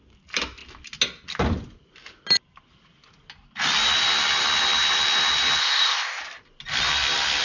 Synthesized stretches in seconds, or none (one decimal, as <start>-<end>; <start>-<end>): 5.6-6.2